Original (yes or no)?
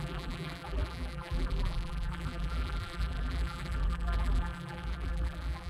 no